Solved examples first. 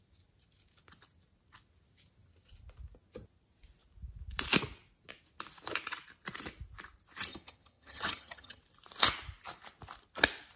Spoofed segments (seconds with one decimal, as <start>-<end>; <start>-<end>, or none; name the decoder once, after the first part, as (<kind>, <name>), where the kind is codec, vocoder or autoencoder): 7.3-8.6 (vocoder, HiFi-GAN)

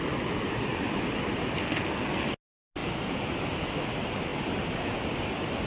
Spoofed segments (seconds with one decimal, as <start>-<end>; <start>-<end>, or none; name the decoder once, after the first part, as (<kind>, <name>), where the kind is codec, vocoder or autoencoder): 1.6-2.2 (codec, SNAC)

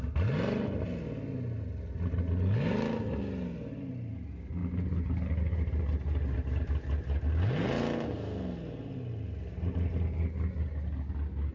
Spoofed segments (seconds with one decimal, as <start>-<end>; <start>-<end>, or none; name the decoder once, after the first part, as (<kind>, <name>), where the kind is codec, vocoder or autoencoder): 4.6-6.7 (vocoder, BigVGAN v2)

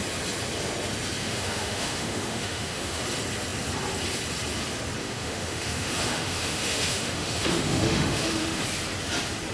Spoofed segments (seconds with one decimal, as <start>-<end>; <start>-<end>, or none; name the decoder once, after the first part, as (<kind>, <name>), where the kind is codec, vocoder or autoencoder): 1.2-3.0 (autoencoder, DAC-VAE); 5.0-8.6